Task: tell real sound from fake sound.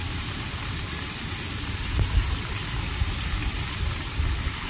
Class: real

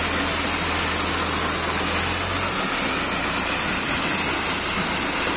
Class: real